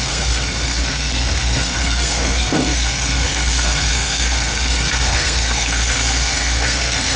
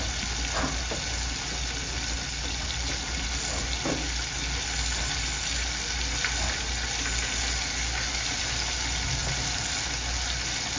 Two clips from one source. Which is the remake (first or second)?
first